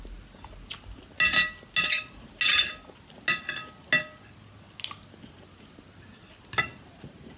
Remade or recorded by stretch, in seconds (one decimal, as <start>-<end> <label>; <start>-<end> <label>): 0.0-7.4 recorded